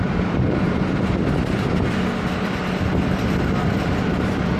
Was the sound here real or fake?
fake